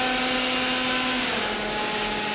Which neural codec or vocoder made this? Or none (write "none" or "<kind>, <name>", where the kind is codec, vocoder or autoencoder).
none